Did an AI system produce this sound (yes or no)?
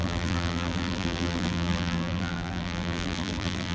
yes